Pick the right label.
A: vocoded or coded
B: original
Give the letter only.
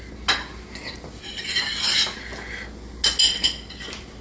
B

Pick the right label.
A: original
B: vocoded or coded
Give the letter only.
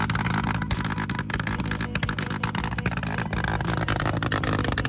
A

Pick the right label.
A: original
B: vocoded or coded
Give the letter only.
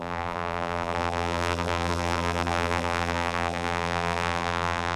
B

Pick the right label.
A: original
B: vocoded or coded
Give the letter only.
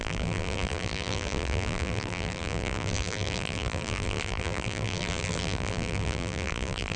B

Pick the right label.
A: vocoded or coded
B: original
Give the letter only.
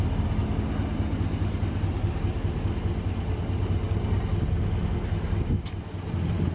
B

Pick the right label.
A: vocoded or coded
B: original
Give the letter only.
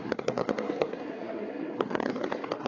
A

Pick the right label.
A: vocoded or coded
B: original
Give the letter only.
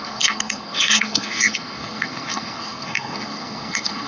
A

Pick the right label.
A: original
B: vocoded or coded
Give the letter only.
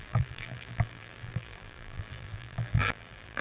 B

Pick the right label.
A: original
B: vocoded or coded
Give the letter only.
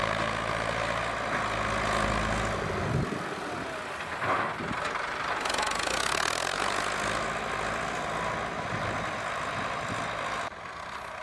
A